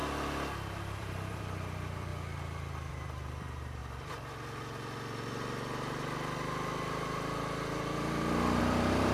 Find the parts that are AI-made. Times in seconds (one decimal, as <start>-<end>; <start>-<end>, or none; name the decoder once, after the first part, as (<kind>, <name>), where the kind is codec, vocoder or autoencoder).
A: 0.8-2.1 (vocoder, BigVGAN v2); 2.9-3.8; 8.6-9.1